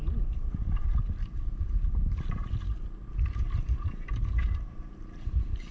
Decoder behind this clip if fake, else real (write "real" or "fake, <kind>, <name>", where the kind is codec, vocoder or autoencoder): real